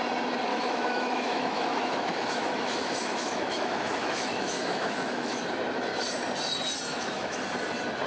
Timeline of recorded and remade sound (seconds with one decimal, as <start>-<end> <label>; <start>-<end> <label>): 0.0-0.5 recorded; 0.5-5.4 remade; 5.4-6.9 recorded; 6.9-7.4 remade; 7.4-8.1 recorded